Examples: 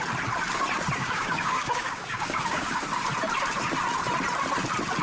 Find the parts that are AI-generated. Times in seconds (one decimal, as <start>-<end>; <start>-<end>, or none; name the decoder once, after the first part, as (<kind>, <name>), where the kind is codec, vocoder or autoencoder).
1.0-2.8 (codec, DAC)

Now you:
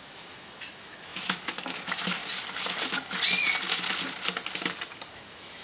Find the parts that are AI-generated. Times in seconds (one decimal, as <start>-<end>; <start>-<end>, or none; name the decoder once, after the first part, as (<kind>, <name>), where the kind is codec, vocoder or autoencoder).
0.0-2.2 (autoencoder, DAC-VAE); 5.1-5.6

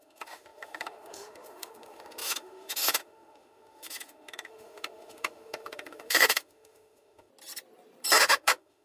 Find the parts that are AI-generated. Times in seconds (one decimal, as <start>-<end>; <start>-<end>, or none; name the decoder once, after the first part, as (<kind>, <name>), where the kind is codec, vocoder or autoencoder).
0.0-7.3 (autoencoder, DAC-VAE); 8.2-8.8

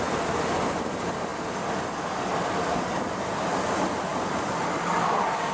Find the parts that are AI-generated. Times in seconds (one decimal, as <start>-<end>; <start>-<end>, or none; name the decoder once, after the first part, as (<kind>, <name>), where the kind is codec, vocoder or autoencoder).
none

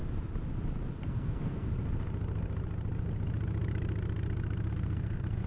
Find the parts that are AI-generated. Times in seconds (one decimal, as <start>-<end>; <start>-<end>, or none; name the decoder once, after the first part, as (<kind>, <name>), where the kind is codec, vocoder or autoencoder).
1.0-1.7 (codec, SNAC); 4.7-5.5

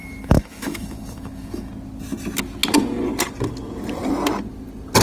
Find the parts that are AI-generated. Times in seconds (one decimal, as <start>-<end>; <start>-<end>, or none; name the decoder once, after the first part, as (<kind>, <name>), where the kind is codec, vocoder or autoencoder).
0.0-1.7 (autoencoder, DAC-VAE)